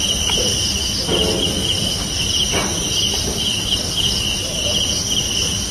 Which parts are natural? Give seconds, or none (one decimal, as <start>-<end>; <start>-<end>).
0.0-5.7